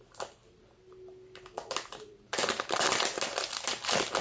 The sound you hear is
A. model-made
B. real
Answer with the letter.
B